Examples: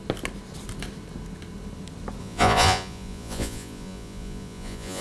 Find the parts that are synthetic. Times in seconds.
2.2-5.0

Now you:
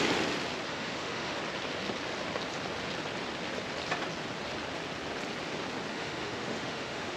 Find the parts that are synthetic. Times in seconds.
0.7-1.4; 5.9-7.2

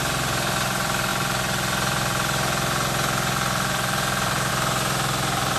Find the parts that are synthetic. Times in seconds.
0.0-5.6

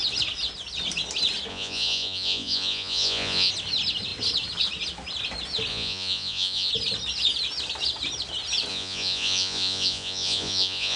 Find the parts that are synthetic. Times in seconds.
1.5-3.5; 5.7-6.7; 8.7-11.0